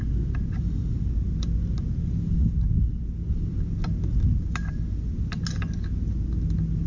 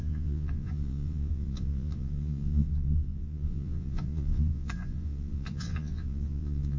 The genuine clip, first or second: first